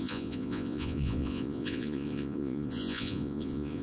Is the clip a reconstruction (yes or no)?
yes